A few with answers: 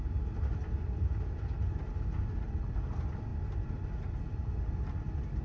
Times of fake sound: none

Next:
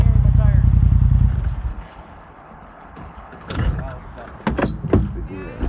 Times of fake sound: 1.7-3.8 (codec, HILCodec)

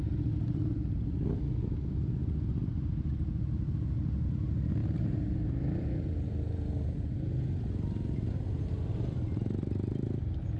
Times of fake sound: none

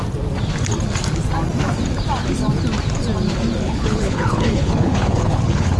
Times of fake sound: 3.6-5.8 (codec, HILCodec)

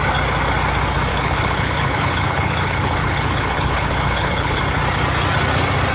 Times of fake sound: 1.1-4.6 (codec, HILCodec)